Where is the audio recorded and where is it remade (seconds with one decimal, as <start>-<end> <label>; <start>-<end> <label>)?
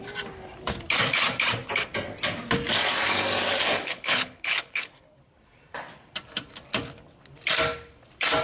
0.0-3.6 recorded; 3.6-5.2 remade; 5.2-8.4 recorded